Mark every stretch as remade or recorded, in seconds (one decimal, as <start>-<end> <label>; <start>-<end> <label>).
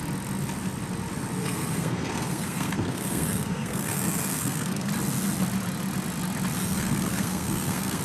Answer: 0.0-1.4 recorded; 1.4-4.9 remade; 4.9-6.6 recorded; 6.6-8.0 remade